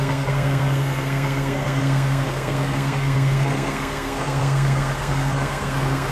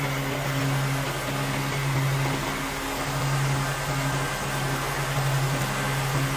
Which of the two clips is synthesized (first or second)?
first